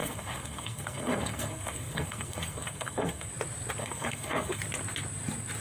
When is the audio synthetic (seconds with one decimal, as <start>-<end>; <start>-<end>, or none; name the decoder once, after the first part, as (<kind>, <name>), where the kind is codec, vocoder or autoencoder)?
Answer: 0.0-3.3 (codec, SNAC); 3.8-4.6